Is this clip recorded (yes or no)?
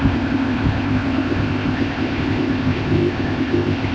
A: no